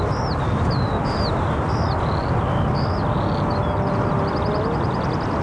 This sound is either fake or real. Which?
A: real